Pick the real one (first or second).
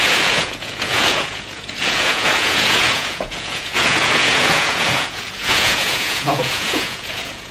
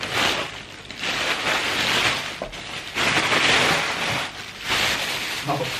second